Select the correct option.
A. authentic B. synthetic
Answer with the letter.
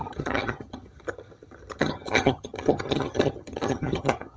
B